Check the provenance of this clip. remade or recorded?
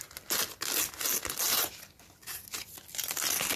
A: recorded